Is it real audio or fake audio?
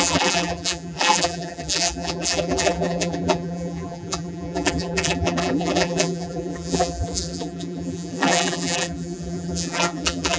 fake